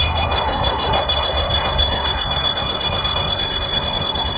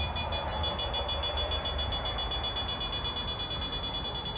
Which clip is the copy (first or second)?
first